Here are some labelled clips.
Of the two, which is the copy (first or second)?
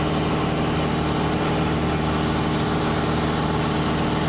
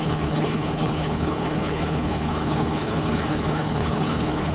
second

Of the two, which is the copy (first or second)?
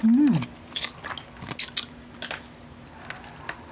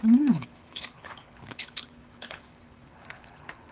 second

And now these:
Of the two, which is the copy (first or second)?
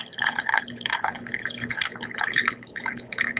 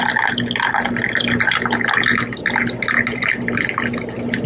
first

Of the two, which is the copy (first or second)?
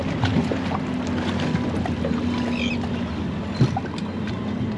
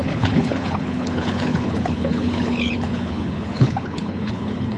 second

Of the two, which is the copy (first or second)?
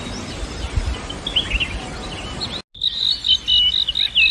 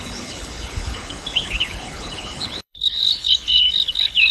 second